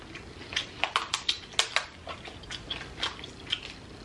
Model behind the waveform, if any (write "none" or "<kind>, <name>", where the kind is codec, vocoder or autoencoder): none